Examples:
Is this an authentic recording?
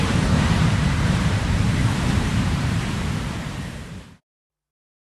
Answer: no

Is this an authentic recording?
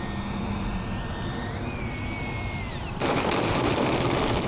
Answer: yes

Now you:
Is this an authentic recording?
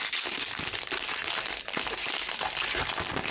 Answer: yes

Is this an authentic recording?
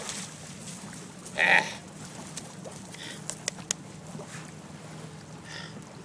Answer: yes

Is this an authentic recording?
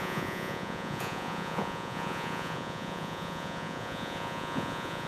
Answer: no